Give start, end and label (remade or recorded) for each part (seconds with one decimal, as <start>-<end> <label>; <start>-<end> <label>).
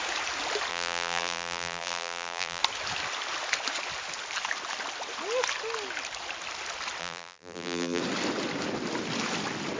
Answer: 0.0-0.7 recorded; 0.7-2.6 remade; 2.6-7.0 recorded; 7.0-8.0 remade; 8.0-9.8 recorded